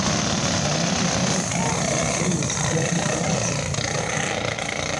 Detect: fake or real real